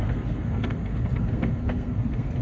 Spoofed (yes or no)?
yes